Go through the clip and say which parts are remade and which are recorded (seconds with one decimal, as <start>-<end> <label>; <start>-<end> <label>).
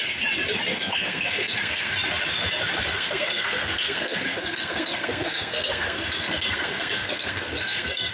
0.0-0.7 recorded; 0.7-1.9 remade; 1.9-2.9 recorded; 2.9-8.1 remade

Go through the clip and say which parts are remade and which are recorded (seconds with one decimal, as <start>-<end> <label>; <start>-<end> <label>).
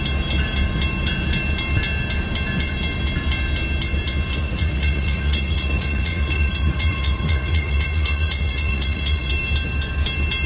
0.0-4.4 recorded; 4.4-9.3 remade; 9.3-10.5 recorded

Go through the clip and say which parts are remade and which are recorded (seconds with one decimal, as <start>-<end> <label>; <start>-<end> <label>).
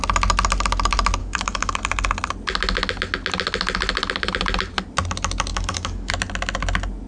0.0-1.2 recorded; 1.2-1.8 remade; 1.8-5.5 recorded; 5.5-6.1 remade; 6.1-7.1 recorded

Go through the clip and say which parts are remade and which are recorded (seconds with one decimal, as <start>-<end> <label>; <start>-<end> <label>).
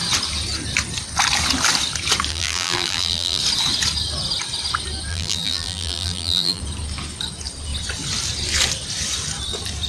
0.0-2.3 recorded; 2.3-3.4 remade; 3.4-5.1 recorded; 5.1-6.6 remade; 6.6-9.9 recorded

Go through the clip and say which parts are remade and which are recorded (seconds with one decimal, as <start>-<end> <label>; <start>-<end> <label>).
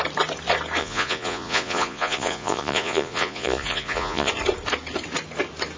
0.0-0.8 recorded; 0.8-4.3 remade; 4.3-5.8 recorded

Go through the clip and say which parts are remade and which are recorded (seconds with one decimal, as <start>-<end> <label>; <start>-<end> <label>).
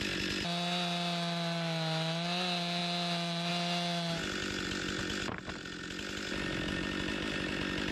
0.0-7.9 recorded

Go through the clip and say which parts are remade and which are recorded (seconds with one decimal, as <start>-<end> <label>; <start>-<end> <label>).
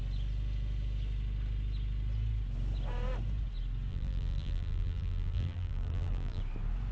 0.0-3.9 recorded; 3.9-6.4 remade; 6.4-6.9 recorded